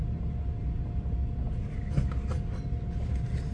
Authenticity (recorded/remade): recorded